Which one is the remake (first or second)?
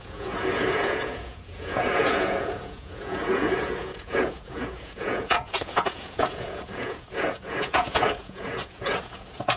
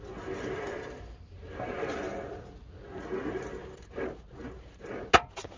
first